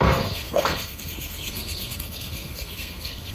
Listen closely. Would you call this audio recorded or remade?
remade